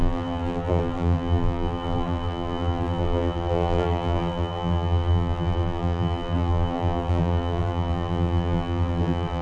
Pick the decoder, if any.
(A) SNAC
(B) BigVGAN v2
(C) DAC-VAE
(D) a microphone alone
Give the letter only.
B